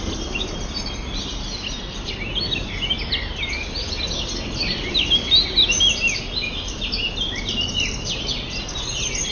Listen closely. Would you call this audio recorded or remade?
recorded